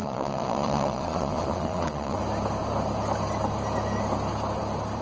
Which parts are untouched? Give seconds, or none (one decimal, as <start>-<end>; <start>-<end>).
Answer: 2.2-5.0